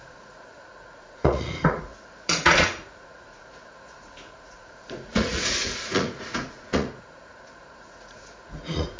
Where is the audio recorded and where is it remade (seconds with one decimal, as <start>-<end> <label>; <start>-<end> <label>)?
0.0-9.0 remade